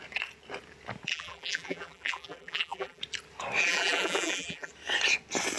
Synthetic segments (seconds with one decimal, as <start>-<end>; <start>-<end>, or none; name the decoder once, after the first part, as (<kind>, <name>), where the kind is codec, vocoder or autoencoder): 1.1-3.0 (vocoder, BigVGAN v2); 3.6-4.7